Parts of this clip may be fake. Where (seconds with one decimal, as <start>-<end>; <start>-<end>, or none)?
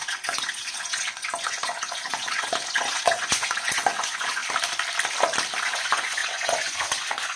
0.0-4.4; 5.6-7.4